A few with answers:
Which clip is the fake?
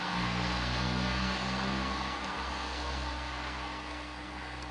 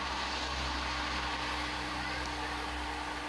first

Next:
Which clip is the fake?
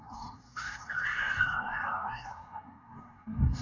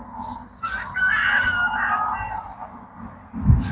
first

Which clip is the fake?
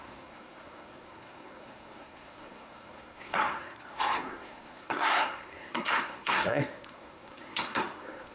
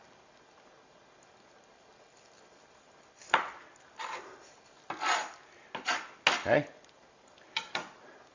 first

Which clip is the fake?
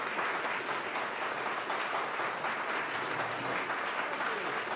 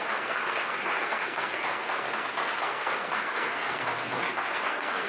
second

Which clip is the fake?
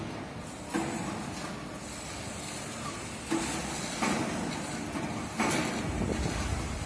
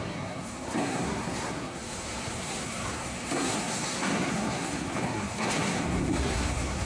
second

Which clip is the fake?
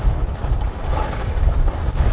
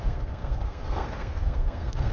second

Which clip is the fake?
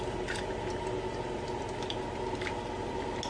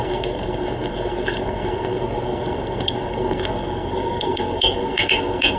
second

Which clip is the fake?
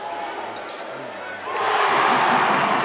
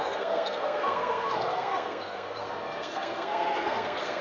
second